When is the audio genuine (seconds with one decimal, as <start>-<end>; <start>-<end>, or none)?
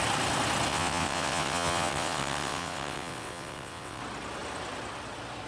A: 0.0-0.7; 4.0-5.5